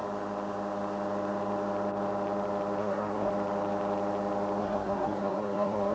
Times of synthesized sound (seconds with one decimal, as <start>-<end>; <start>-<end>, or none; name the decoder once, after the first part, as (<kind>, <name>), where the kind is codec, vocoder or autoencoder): 2.8-3.3 (codec, SNAC); 4.6-5.9